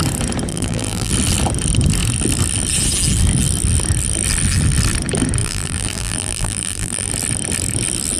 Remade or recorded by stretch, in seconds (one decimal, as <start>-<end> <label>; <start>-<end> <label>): 0.0-0.5 recorded; 0.5-1.1 remade; 1.1-5.4 recorded; 5.4-7.1 remade; 7.1-8.2 recorded